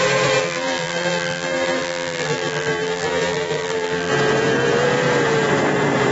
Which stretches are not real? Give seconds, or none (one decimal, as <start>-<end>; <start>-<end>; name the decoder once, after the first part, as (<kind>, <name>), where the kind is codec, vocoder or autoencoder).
0.4-4.1 (vocoder, BigVGAN v2)

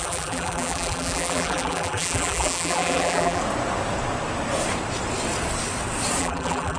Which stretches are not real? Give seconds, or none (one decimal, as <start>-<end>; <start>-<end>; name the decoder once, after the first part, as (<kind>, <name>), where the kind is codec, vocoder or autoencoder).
0.0-3.4 (vocoder, BigVGAN v2); 6.2-6.8

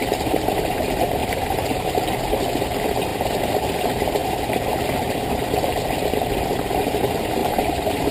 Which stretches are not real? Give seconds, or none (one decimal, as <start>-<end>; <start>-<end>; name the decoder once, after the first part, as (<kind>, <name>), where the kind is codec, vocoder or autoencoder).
1.2-2.0 (vocoder, BigVGAN v2); 7.4-8.1

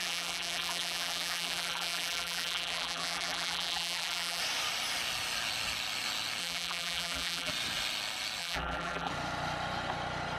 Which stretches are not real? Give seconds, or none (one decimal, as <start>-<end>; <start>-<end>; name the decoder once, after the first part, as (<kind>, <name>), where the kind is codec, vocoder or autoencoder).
0.0-4.4 (vocoder, BigVGAN v2); 6.4-7.5; 8.4-9.1

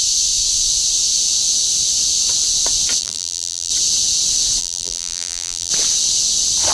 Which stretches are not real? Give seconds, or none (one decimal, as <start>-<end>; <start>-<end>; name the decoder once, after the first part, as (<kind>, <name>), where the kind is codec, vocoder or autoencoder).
3.0-3.7 (vocoder, BigVGAN v2); 4.6-5.7

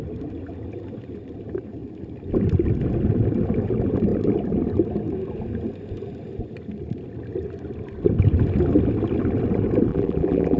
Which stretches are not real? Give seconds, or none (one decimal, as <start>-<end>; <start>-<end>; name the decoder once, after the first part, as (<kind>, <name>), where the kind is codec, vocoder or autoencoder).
9.9-10.6 (vocoder, BigVGAN v2)

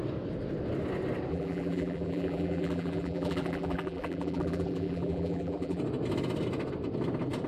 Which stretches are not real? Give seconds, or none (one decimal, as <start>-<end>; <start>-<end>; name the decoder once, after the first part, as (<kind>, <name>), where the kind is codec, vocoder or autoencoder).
1.3-5.8 (vocoder, BigVGAN v2)

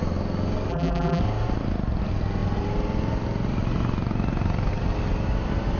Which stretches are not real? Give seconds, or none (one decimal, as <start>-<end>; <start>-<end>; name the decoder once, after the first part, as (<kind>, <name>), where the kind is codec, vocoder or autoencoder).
0.7-1.2 (vocoder, BigVGAN v2)